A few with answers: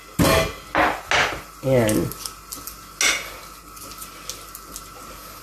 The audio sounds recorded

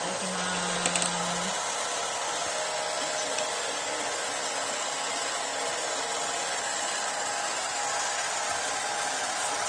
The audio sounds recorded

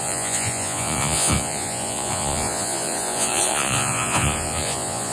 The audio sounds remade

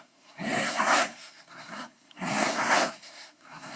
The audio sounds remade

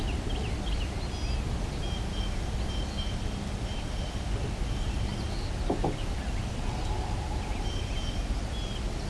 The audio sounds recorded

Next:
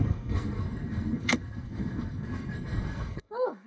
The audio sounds remade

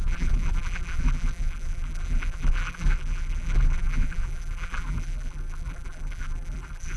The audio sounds remade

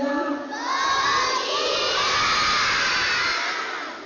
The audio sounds recorded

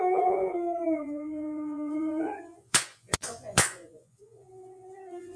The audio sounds remade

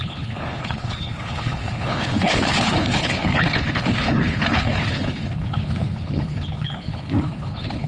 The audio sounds remade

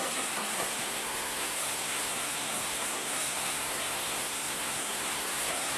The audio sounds remade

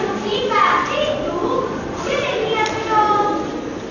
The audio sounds recorded